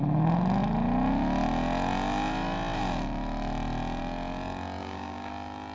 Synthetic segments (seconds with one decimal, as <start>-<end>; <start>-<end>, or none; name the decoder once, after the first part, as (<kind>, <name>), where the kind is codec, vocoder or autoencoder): 4.8-5.3 (codec, DAC)